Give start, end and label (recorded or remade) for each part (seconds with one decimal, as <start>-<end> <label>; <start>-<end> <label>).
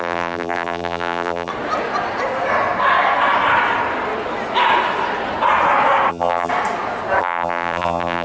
0.0-1.5 remade; 1.5-6.1 recorded; 6.1-6.5 remade; 6.5-7.2 recorded; 7.2-8.2 remade